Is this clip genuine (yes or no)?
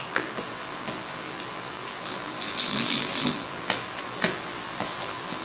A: no